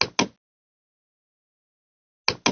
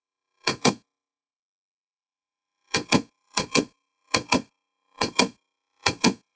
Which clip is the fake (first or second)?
second